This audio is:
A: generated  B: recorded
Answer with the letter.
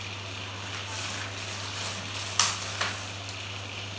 B